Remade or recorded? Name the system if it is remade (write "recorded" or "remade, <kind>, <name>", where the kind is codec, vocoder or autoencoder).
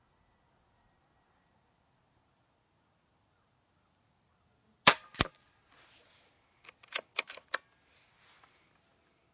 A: recorded